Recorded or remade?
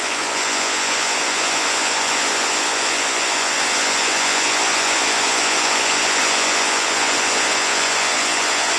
remade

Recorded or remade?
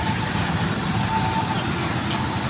recorded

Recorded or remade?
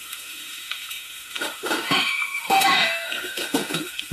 remade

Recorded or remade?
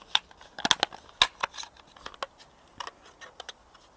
recorded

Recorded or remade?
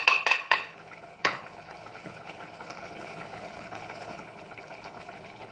remade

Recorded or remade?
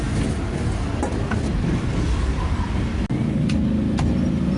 recorded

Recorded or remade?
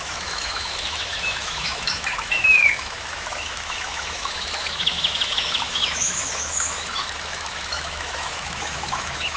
remade